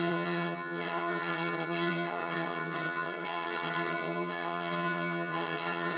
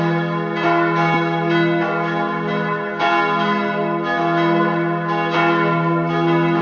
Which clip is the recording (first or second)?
second